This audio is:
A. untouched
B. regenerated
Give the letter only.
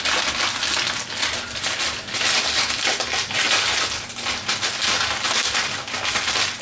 A